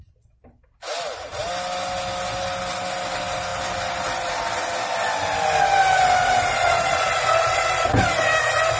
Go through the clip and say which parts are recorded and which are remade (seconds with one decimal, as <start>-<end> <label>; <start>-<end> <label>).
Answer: 0.0-8.8 recorded